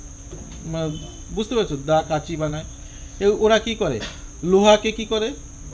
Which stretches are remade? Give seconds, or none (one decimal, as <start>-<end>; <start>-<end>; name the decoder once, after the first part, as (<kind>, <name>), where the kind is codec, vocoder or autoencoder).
0.0-5.7 (vocoder, Vocos)